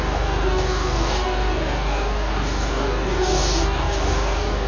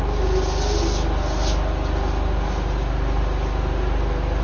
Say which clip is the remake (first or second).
first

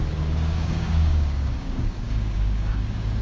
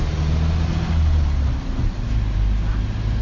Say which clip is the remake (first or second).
first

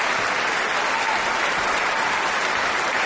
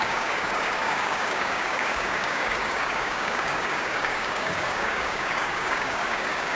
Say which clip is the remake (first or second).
second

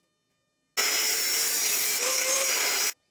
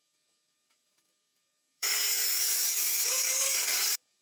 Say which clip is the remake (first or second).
second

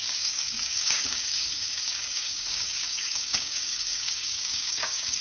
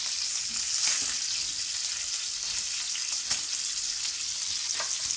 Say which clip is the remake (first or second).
first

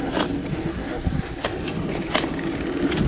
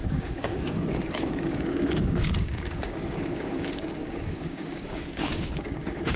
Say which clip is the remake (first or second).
second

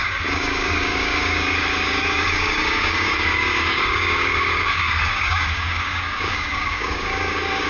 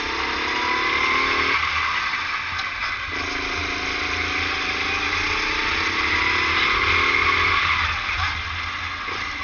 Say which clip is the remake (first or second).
first